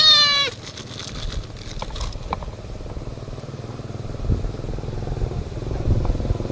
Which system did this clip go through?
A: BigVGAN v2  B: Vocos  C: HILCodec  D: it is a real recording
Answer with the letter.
D